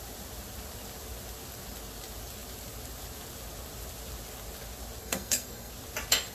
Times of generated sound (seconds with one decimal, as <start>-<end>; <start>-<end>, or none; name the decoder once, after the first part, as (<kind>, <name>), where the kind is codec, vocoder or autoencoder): 5.0-5.7 (codec, SNAC)